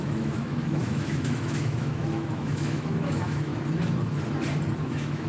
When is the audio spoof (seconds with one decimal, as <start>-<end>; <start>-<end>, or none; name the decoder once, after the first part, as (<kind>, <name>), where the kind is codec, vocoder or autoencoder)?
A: 0.0-3.5 (autoencoder, DAC-VAE); 4.8-5.3